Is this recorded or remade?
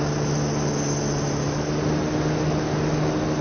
recorded